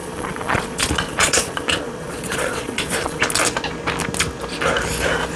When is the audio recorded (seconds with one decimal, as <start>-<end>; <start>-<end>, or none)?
3.2-5.4